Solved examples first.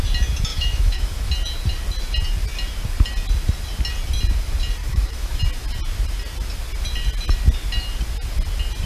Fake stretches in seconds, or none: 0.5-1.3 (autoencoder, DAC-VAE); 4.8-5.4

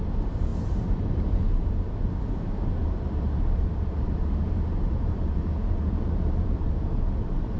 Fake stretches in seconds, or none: 0.0-7.6 (vocoder, BigVGAN v2)

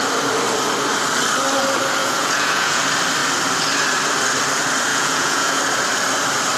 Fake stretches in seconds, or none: 2.0-2.8 (vocoder, Vocos); 4.9-5.6

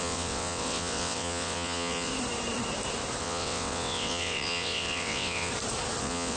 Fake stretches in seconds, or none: 0.0-2.1 (vocoder, WaveNeXt); 3.2-5.5; 6.0-6.4